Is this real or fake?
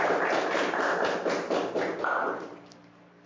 real